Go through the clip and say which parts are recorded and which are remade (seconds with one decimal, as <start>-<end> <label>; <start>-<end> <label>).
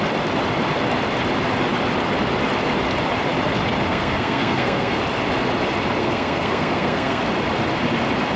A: 0.0-3.9 recorded; 3.9-5.0 remade; 5.0-6.0 recorded; 6.0-7.2 remade; 7.2-8.4 recorded